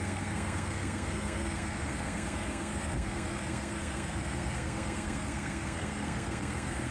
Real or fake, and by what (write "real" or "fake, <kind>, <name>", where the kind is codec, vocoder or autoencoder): fake, codec, SNAC